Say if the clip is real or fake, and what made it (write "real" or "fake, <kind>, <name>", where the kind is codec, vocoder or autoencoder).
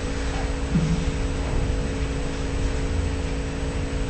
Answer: real